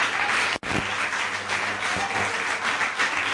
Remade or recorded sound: recorded